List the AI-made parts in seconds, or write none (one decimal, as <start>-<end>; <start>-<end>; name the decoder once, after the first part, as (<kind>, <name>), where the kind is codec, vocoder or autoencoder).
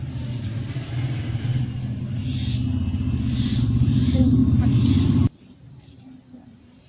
0.0-1.5 (vocoder, BigVGAN v2); 3.6-4.4; 5.5-6.9